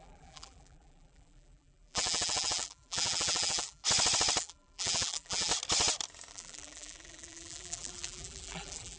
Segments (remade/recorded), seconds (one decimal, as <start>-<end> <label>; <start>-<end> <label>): 0.0-3.8 remade; 3.8-4.4 recorded; 4.4-5.5 remade; 5.5-6.3 recorded; 6.3-9.0 remade